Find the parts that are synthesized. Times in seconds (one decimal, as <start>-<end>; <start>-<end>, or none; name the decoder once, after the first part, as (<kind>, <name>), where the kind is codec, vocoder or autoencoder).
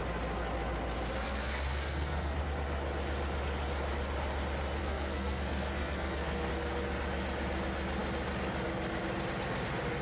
1.4-2.4 (codec, SNAC); 4.8-6.5